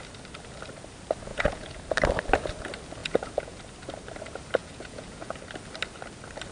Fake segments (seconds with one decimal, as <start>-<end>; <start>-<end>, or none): 1.3-1.8; 3.0-3.6; 4.6-5.4